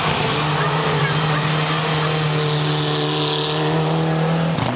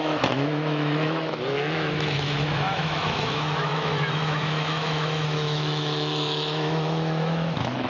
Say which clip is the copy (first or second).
second